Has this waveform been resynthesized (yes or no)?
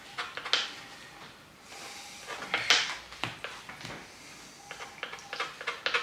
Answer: no